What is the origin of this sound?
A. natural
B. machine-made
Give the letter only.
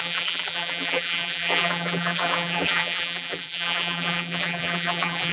B